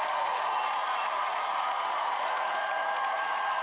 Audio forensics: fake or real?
fake